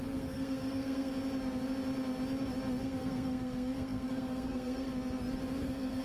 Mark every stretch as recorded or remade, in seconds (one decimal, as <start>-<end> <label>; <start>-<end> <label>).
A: 0.0-1.1 remade; 1.1-2.8 recorded; 2.8-4.9 remade; 4.9-5.6 recorded; 5.6-6.0 remade